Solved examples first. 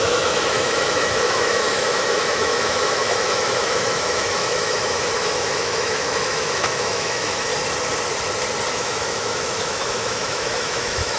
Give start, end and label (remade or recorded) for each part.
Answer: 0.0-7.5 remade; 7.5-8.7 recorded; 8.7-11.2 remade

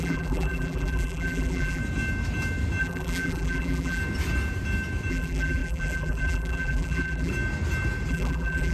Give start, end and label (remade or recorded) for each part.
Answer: 0.0-1.8 remade; 1.8-2.8 recorded; 2.8-4.0 remade; 4.0-5.1 recorded; 5.1-7.3 remade; 7.3-8.1 recorded; 8.1-8.7 remade

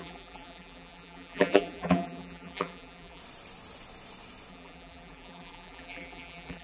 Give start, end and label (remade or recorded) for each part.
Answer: 0.0-3.2 remade; 3.2-4.5 recorded; 4.5-6.6 remade

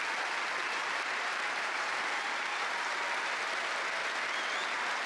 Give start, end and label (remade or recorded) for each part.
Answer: 0.0-0.6 recorded; 0.6-3.0 remade; 3.0-5.1 recorded